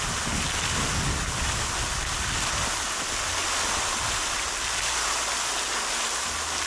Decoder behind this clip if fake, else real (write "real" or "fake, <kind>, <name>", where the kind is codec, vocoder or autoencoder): real